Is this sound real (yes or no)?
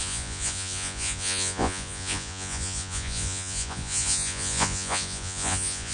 no